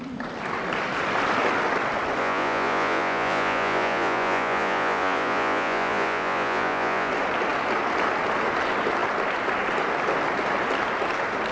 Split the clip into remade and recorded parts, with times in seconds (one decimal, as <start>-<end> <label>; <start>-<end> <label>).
0.0-2.2 recorded; 2.2-7.1 remade; 7.1-11.5 recorded

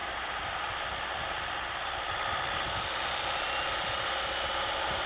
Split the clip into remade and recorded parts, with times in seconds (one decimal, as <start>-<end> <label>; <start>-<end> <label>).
0.0-5.1 recorded

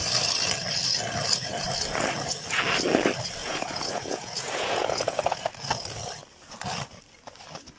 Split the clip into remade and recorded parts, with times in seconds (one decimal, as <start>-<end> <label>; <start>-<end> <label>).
0.0-3.4 recorded; 3.4-5.5 remade; 5.5-7.8 recorded

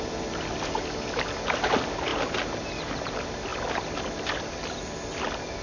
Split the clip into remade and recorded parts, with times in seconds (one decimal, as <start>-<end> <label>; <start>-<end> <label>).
0.0-5.6 recorded

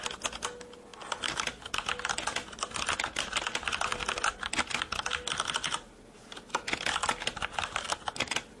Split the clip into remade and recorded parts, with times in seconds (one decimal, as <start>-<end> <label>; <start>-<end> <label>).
0.0-8.6 recorded

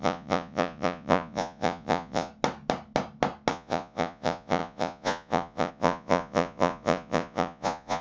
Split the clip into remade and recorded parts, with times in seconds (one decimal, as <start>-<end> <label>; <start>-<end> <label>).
0.0-2.3 remade; 2.3-3.5 recorded; 3.5-8.0 remade